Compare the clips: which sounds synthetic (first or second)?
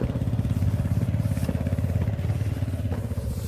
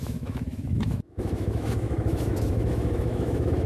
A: second